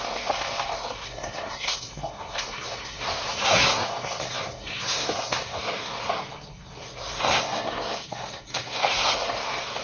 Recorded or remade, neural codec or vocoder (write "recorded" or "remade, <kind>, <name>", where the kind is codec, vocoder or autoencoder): remade, codec, SNAC